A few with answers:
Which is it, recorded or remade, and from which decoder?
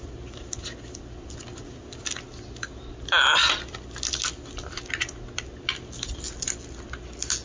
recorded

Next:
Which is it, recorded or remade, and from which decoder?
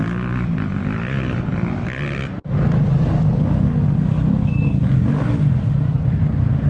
recorded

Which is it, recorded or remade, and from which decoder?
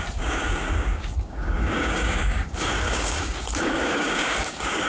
remade, codec, DAC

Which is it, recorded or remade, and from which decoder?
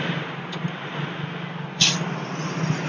recorded